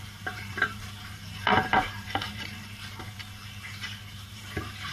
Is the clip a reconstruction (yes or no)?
yes